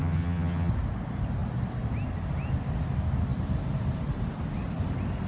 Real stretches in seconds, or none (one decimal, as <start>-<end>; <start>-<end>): 0.7-5.3